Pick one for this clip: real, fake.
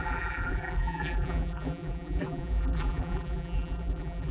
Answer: fake